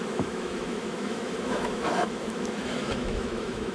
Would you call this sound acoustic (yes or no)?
no